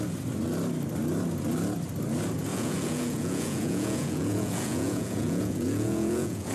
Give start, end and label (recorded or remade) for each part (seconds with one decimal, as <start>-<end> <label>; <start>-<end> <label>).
0.0-2.5 recorded; 2.5-6.5 remade